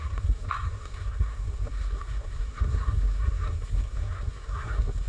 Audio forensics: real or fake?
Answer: fake